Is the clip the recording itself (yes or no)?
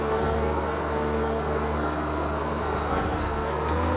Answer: no